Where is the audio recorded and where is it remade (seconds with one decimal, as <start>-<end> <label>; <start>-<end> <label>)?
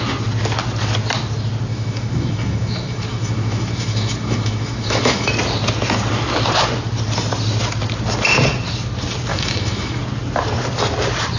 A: 0.0-1.7 recorded; 1.7-5.3 remade; 5.3-9.3 recorded; 9.3-10.0 remade; 10.0-11.4 recorded